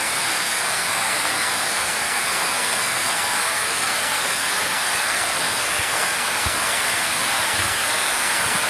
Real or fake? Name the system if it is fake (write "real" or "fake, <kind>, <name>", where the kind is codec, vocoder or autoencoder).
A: fake, codec, SNAC